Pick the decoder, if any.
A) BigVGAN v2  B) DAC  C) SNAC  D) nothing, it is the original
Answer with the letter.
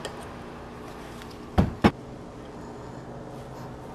D